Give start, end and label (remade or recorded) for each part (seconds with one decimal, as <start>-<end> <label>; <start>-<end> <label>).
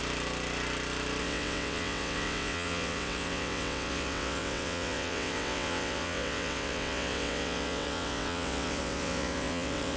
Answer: 0.0-1.2 recorded; 1.2-10.0 remade